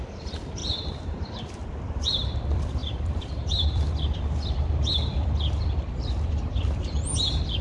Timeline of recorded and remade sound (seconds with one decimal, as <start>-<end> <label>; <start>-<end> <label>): 0.0-7.6 remade